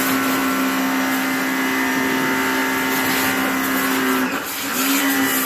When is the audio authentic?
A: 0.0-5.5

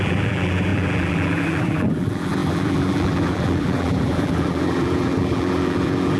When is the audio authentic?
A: none

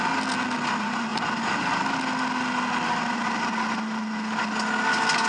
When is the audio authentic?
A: 0.0-5.3